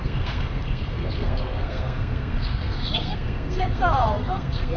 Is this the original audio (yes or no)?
no